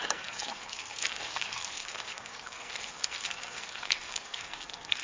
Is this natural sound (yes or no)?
no